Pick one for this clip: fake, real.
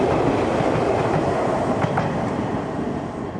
real